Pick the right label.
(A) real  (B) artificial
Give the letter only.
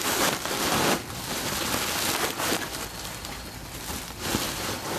A